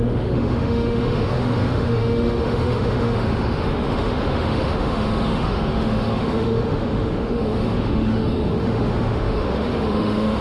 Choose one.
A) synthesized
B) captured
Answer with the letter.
A